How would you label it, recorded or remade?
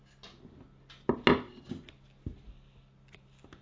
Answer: recorded